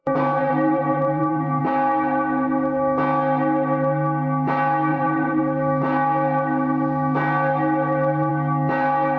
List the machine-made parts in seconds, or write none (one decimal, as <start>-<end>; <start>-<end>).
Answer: 0.0-1.6; 4.9-5.4